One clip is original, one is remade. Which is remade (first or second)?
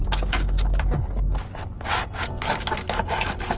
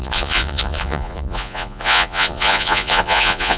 second